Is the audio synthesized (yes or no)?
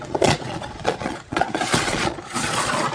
yes